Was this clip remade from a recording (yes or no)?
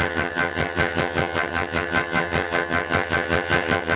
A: yes